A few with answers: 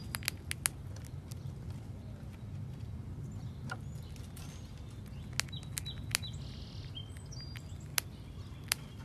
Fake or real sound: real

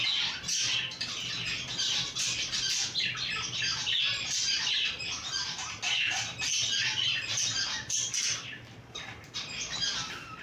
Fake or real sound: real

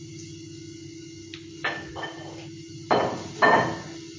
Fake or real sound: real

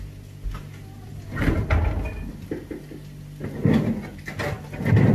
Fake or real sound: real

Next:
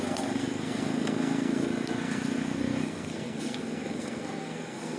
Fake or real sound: fake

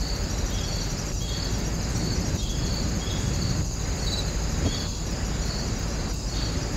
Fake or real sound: real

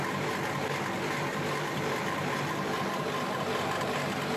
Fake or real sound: real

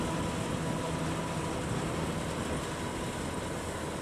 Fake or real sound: real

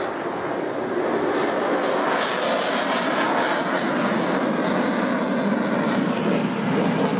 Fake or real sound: real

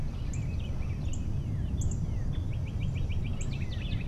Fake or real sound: real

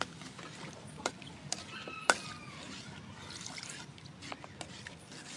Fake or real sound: real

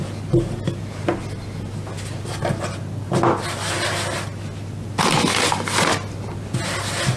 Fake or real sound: real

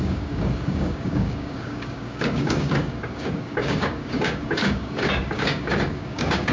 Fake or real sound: fake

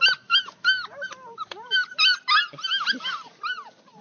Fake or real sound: real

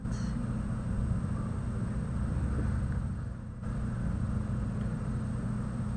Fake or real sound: real